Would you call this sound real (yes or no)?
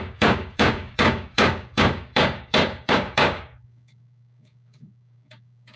no